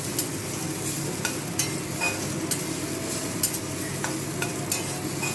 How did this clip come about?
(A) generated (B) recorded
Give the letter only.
B